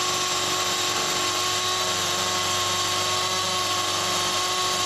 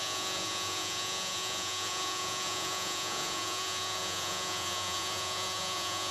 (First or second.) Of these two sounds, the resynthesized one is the second